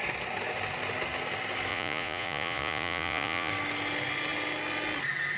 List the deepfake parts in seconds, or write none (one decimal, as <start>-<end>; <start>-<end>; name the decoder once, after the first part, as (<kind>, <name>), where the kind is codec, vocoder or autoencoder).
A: 1.7-3.5 (vocoder, Vocos)